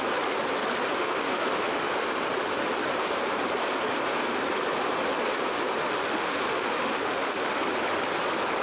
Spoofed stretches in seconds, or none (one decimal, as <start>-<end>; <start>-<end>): 1.0-1.9; 5.8-7.2